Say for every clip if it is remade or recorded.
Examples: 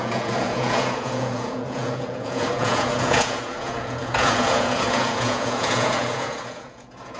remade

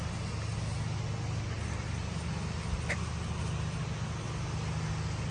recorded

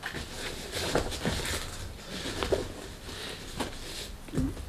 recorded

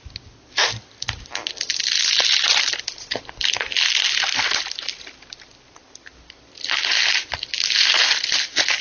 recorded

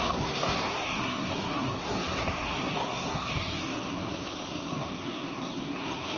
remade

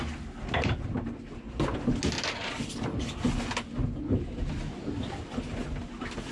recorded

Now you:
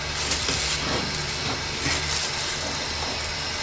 recorded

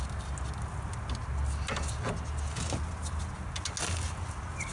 recorded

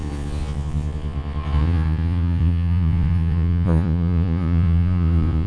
remade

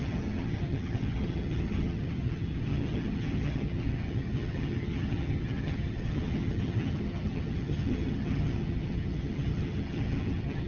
remade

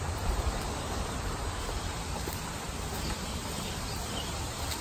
remade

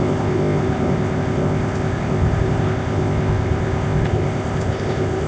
remade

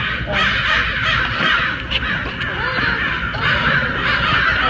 recorded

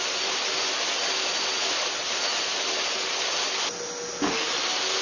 recorded